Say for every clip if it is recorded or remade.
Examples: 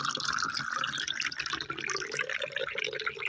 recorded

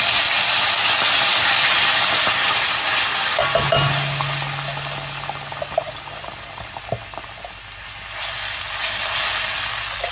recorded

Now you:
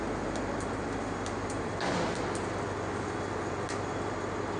recorded